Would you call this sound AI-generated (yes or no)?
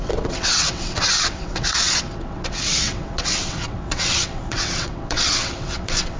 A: yes